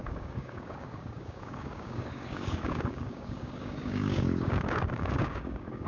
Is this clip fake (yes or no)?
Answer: yes